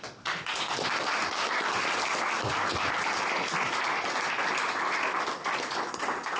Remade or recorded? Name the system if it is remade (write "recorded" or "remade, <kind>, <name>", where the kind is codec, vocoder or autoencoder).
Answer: recorded